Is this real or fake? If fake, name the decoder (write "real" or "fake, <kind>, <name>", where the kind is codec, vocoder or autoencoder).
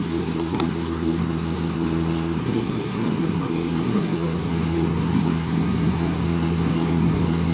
fake, codec, SNAC